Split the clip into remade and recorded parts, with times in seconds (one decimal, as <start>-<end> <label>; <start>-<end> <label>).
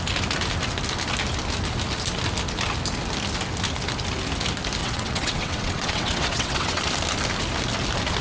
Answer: 0.0-4.8 recorded; 4.8-6.8 remade; 6.8-8.2 recorded